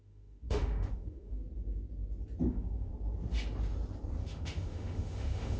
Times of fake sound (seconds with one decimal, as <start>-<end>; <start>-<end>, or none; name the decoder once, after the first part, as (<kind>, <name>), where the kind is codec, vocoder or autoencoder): 0.0-1.4 (autoencoder, DAC-VAE); 2.5-2.9; 4.2-5.6